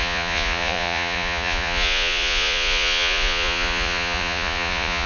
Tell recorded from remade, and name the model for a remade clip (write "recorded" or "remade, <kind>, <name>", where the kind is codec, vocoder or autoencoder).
remade, vocoder, Vocos